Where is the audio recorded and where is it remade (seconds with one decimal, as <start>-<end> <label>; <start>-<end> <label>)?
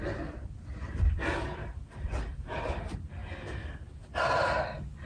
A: 0.0-1.6 recorded; 1.6-2.6 remade; 2.6-5.1 recorded